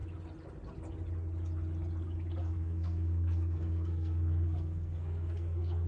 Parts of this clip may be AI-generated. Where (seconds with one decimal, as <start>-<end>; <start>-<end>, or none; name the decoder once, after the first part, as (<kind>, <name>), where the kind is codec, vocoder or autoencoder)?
2.4-5.9 (codec, SNAC)